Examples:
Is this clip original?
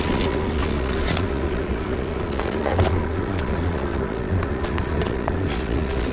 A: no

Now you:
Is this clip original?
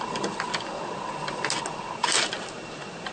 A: yes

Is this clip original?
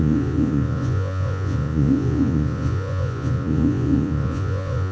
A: no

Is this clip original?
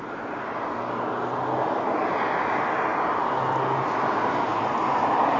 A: yes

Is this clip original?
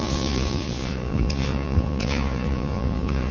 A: no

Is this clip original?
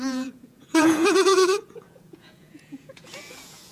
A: no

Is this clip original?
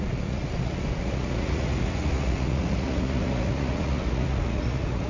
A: no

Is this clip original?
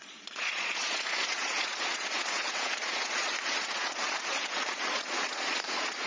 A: no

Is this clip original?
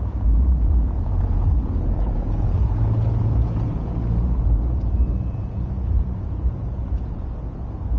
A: no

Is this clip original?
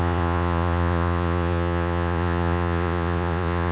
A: no